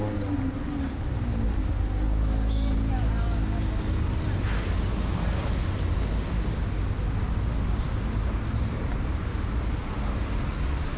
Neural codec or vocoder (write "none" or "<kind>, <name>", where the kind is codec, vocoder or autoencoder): none